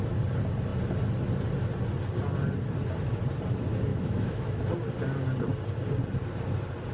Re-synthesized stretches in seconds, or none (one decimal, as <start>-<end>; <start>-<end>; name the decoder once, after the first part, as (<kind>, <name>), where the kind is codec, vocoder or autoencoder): 3.9-4.7 (autoencoder, DAC-VAE)